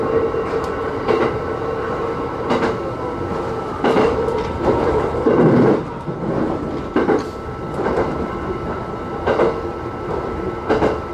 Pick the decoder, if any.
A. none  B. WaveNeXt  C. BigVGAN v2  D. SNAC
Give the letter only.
A